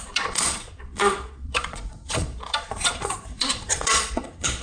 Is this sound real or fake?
fake